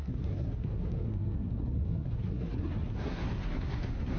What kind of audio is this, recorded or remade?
remade